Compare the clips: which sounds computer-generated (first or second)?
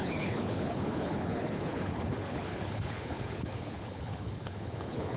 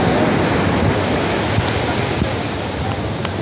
first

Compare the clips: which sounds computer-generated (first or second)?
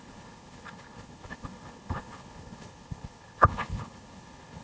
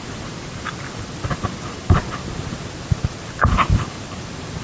first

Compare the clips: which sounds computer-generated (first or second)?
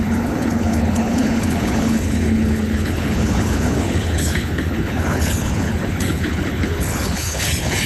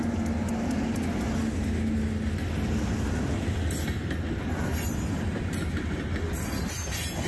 first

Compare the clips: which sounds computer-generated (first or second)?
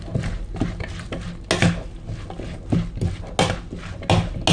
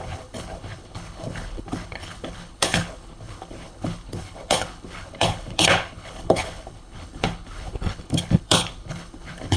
second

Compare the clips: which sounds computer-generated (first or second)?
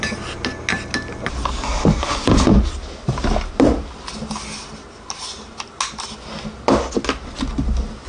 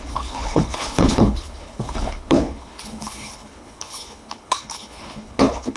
second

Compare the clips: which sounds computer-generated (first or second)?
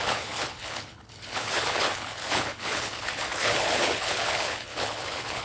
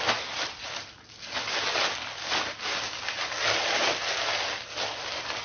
first